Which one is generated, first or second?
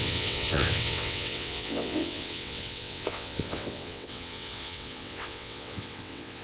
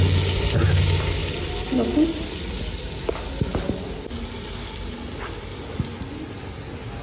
first